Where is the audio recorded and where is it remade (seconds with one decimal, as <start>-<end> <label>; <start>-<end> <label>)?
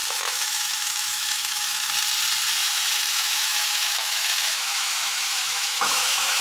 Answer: 0.0-1.9 remade; 1.9-2.6 recorded; 2.6-6.4 remade